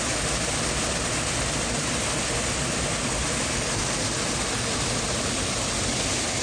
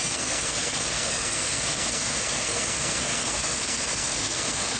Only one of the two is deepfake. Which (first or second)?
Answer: second